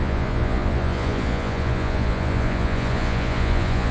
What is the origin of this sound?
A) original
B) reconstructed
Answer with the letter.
B